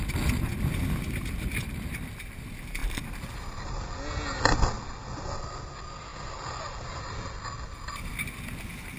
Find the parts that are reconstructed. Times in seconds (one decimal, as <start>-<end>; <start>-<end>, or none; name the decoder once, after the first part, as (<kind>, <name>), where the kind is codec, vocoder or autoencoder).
none